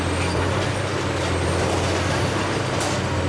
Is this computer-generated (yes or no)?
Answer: no